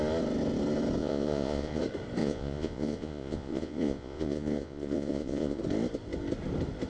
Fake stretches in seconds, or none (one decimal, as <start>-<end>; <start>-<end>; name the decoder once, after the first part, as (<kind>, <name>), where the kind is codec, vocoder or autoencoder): 1.0-1.8 (vocoder, Vocos); 2.2-5.6